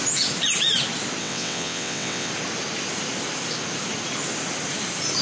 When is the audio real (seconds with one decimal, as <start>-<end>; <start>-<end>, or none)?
0.0-1.2; 2.3-5.2